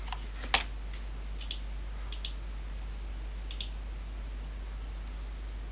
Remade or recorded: recorded